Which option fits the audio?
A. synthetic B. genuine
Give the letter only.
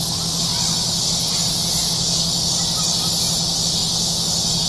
B